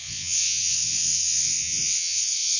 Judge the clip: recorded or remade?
remade